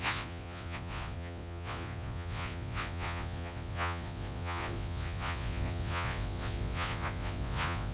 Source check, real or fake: fake